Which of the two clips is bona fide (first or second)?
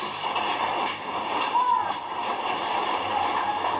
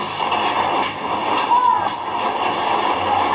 second